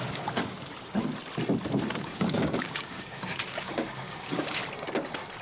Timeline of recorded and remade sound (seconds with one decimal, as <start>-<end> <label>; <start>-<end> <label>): 0.0-1.1 remade; 1.1-1.9 recorded; 1.9-4.6 remade; 4.6-5.4 recorded